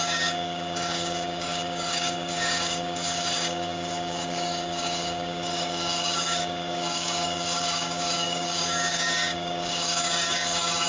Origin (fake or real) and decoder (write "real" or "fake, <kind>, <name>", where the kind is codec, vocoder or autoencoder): fake, codec, DAC